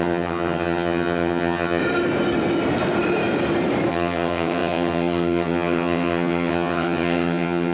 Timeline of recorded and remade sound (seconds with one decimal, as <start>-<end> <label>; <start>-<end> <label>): 0.0-1.8 remade; 1.8-3.9 recorded; 3.9-7.7 remade